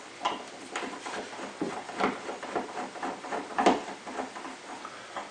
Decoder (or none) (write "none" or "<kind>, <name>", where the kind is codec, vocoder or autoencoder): none